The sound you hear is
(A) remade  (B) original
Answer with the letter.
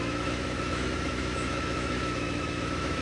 A